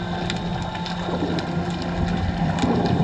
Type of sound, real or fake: real